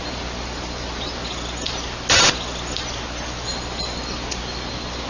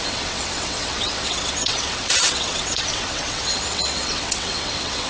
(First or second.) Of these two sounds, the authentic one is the first